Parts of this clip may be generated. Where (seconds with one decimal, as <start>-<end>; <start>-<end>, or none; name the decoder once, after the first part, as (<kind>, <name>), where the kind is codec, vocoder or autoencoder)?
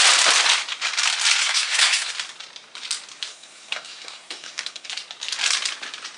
1.4-2.1 (codec, SNAC); 3.3-4.9